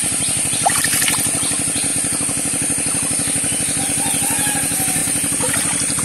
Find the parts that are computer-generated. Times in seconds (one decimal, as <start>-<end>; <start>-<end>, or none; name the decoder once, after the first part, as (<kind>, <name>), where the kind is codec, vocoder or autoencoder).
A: 0.0-0.8 (vocoder, BigVGAN v2); 5.0-6.0